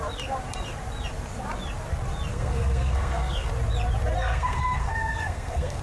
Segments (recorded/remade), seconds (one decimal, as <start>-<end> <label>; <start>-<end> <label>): 0.0-2.3 recorded; 2.3-3.5 remade; 3.5-4.2 recorded; 4.2-5.8 remade